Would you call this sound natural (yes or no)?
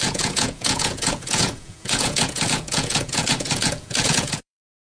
no